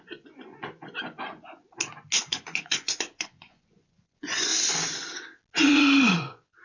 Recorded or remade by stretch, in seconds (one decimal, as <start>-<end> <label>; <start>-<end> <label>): 0.0-1.6 remade; 1.6-2.2 recorded; 2.2-4.5 remade; 4.5-5.6 recorded; 5.6-6.6 remade